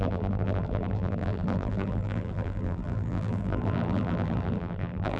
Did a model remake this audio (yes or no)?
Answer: yes